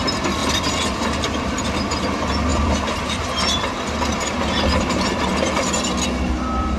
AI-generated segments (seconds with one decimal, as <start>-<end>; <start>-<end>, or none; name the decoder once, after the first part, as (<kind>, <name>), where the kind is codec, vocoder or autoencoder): 0.4-1.6 (vocoder, BigVGAN v2); 2.5-3.7